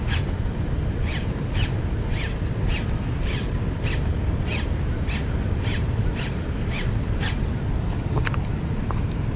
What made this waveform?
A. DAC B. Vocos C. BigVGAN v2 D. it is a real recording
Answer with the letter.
D